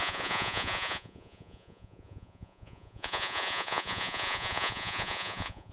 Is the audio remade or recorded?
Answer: remade